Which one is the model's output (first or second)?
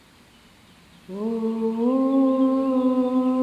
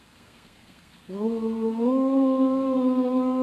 second